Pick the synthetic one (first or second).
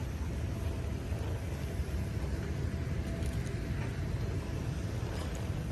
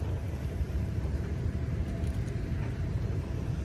second